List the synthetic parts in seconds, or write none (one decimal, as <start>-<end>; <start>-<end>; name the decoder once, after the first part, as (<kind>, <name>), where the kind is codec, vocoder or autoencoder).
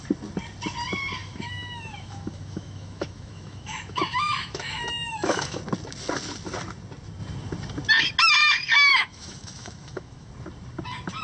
1.2-5.6 (autoencoder, DAC-VAE); 8.9-10.3